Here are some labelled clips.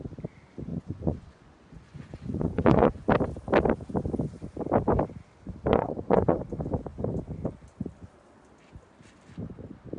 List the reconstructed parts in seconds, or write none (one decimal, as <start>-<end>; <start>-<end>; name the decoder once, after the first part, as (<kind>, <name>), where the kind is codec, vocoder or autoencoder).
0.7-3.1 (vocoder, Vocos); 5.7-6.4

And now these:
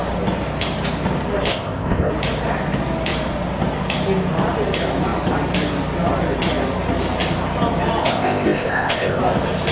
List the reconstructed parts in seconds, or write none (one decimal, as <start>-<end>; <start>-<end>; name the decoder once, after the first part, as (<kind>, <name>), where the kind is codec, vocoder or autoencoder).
1.5-2.1 (codec, ZipCodec); 8.0-9.2

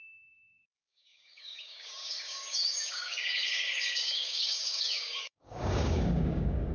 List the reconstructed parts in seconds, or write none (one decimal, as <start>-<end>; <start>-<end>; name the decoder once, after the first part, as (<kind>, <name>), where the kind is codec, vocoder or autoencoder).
0.0-6.7 (codec, DAC)

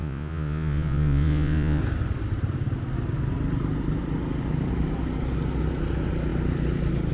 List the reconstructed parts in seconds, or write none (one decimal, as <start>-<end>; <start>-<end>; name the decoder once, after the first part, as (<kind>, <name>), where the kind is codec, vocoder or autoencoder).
0.0-1.8 (vocoder, Vocos)

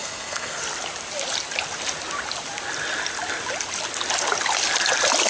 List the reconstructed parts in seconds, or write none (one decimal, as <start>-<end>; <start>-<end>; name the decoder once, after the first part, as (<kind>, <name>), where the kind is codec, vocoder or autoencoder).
0.0-0.6 (codec, SNAC)

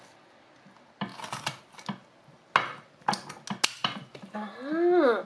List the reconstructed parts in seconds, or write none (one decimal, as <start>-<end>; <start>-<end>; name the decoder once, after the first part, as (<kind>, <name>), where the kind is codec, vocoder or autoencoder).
none

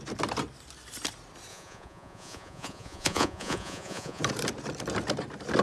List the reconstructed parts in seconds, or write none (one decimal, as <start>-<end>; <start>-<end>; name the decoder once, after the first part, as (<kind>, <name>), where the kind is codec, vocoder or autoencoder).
1.5-4.2 (vocoder, Vocos)